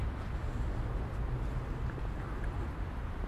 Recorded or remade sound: recorded